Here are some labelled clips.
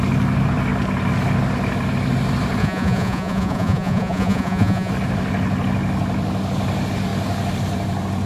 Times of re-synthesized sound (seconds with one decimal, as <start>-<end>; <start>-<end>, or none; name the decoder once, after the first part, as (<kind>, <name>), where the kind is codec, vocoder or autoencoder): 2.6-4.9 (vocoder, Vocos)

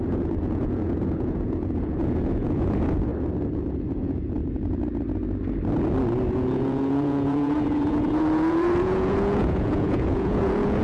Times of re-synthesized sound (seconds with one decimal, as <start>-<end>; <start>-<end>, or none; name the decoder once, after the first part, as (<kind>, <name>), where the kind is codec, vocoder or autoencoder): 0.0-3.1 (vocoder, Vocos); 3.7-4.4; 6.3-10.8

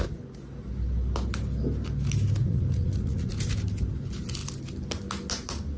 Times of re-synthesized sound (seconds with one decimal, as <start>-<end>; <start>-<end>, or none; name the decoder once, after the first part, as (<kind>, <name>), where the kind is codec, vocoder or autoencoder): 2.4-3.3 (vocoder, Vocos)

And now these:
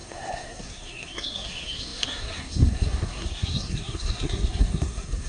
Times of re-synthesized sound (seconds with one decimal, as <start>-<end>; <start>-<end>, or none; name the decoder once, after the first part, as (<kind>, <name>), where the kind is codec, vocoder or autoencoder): 0.0-5.3 (codec, SNAC)